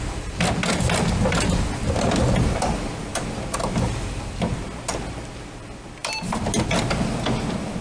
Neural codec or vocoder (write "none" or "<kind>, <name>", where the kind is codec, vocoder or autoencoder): none